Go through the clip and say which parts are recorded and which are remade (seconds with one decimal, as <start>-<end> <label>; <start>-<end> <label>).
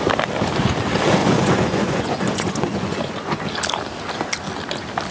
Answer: 0.0-1.2 recorded; 1.2-3.4 remade; 3.4-5.1 recorded